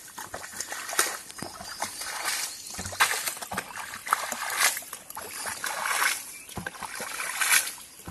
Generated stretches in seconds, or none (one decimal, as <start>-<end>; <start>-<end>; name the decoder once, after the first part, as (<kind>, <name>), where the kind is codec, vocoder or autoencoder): 4.0-4.9 (vocoder, BigVGAN v2)